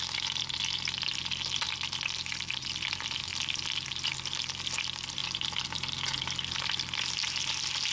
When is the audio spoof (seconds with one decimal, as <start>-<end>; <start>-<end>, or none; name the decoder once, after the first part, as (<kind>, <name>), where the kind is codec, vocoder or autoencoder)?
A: none